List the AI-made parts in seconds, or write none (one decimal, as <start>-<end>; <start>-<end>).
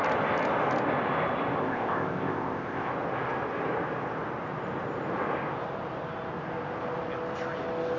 1.6-2.9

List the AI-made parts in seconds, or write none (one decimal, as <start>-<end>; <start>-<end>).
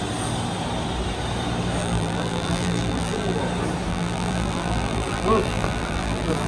1.8-3.4; 3.9-6.5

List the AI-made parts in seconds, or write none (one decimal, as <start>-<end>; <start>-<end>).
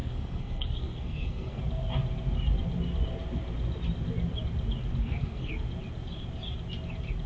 0.0-1.6; 5.0-5.5